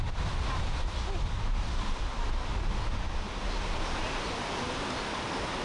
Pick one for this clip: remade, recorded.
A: recorded